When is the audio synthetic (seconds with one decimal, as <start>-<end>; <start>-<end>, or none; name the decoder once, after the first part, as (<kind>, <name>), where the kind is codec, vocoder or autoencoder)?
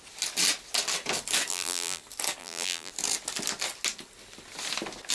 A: 1.5-2.0 (vocoder, BigVGAN v2); 2.4-2.9